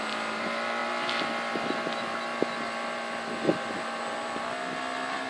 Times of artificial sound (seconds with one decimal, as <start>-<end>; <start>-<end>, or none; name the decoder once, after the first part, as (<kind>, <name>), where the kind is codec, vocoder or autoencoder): none